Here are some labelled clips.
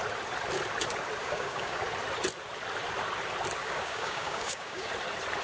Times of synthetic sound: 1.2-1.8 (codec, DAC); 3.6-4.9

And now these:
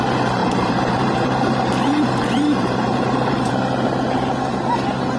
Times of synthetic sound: 0.4-3.5 (vocoder, BigVGAN v2)

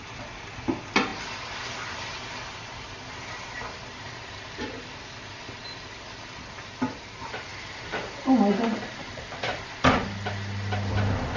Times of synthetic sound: none

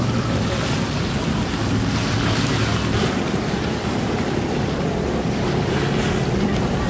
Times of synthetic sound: none

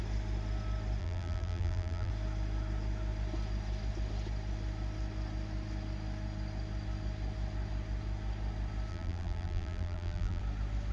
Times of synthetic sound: 1.0-2.1 (vocoder, BigVGAN v2); 8.9-10.4

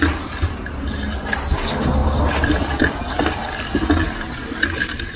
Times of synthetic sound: none